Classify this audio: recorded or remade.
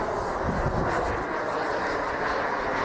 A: recorded